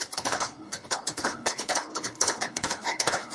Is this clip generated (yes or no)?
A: yes